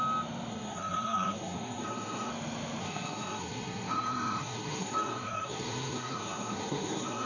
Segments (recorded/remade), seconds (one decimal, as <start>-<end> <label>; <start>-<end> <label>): 0.0-0.5 recorded; 0.5-2.3 remade; 2.3-2.8 recorded; 2.8-7.3 remade

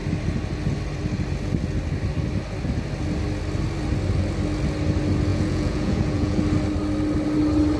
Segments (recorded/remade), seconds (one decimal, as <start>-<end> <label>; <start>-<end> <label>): 0.0-5.3 recorded; 5.3-6.4 remade; 6.4-7.8 recorded

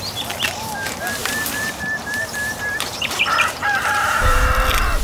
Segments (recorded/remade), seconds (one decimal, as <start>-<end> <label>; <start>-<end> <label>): 0.0-1.2 recorded; 1.2-4.2 remade; 4.2-5.0 recorded

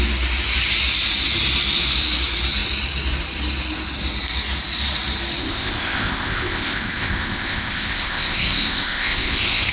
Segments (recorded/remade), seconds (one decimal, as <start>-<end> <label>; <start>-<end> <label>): 0.0-5.4 recorded; 5.4-9.7 remade

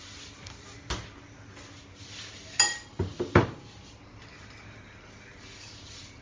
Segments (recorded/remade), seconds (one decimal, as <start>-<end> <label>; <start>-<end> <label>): 0.0-6.2 recorded

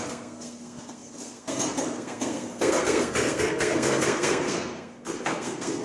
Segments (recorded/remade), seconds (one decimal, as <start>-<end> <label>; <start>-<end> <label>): 0.0-5.8 remade